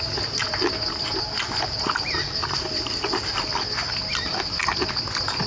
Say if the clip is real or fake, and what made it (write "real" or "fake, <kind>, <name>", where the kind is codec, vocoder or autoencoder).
real